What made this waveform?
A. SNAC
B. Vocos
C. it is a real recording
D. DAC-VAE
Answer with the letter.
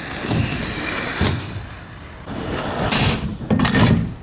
C